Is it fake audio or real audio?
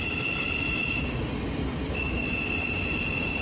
real